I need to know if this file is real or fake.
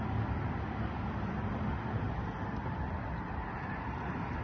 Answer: real